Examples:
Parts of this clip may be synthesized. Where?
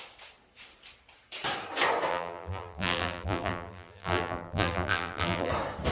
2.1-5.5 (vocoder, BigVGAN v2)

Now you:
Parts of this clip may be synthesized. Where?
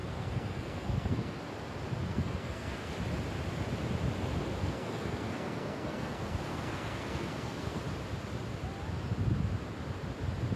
0.0-1.4 (codec, SNAC); 2.1-2.9; 4.6-7.8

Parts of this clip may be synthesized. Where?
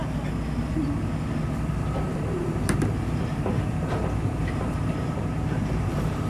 2.1-6.3 (vocoder, BigVGAN v2)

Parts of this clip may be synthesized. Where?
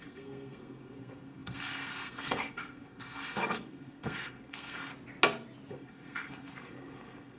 0.0-4.9 (codec, SNAC); 5.7-7.4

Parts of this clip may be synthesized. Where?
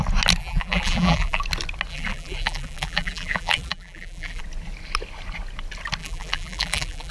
0.4-1.4 (vocoder, BigVGAN v2); 1.9-4.4; 6.0-7.1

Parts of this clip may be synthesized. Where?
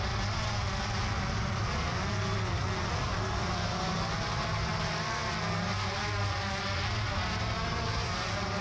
none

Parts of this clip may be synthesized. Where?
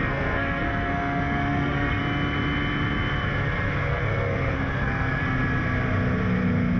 0.0-2.0 (codec, SNAC); 3.9-5.2